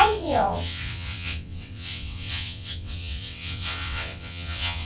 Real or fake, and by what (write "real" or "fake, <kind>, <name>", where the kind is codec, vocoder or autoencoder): fake, vocoder, WaveNeXt